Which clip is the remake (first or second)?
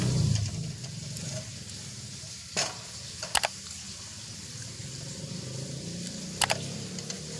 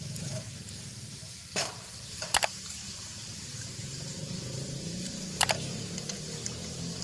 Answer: second